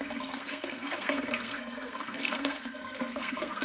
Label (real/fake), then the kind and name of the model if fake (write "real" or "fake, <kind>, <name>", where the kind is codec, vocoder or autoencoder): fake, codec, SNAC